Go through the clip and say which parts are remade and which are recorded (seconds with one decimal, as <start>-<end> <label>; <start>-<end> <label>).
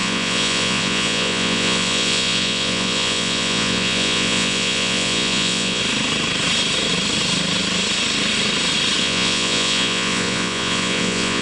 0.0-5.8 remade; 5.8-9.0 recorded; 9.0-11.4 remade